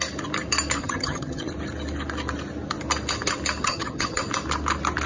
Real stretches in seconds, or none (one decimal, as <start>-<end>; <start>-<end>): 0.0-0.8; 1.5-3.6; 4.2-5.1